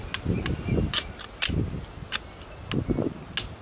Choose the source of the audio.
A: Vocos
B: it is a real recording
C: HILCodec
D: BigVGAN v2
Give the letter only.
B